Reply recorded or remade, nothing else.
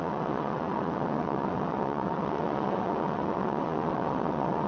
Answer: remade